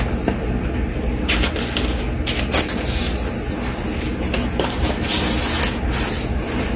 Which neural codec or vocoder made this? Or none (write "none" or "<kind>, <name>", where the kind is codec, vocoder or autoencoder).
none